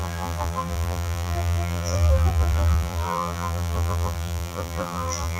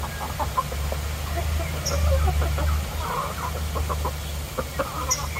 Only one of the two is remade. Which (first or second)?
first